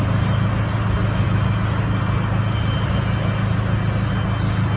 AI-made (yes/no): no